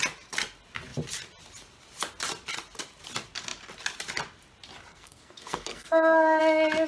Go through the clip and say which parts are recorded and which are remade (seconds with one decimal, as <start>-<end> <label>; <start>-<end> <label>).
0.0-4.9 recorded; 4.9-6.4 remade; 6.4-6.9 recorded